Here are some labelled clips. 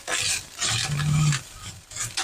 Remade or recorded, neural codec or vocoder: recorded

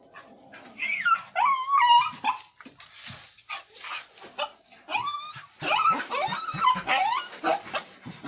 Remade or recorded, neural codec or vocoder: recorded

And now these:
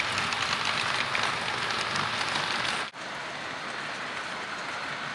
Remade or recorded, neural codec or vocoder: recorded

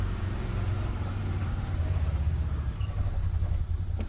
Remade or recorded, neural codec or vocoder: remade, vocoder, BigVGAN v2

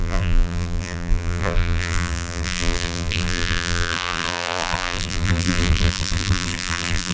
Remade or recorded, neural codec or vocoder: remade, vocoder, BigVGAN v2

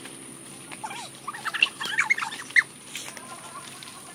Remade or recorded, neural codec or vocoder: recorded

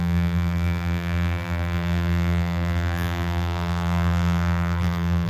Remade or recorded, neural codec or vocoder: remade, vocoder, BigVGAN v2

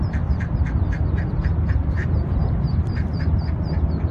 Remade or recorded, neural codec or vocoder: remade, vocoder, BigVGAN v2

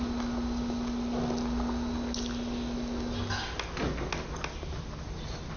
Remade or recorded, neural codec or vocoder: recorded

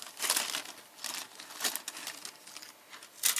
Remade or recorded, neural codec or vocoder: recorded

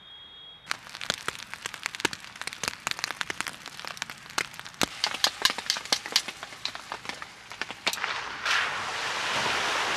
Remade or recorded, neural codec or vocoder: recorded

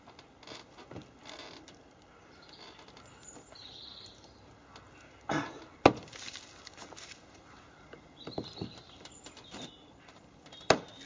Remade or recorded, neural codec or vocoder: recorded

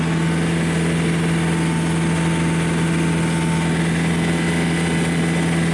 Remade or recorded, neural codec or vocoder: recorded